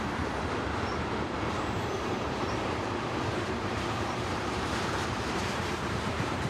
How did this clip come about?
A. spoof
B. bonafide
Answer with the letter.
A